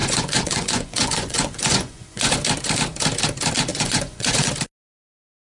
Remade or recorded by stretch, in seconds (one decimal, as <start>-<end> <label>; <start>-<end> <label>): 0.0-2.3 remade; 2.3-3.7 recorded; 3.7-4.5 remade; 4.5-5.5 recorded